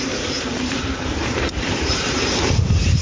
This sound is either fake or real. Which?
fake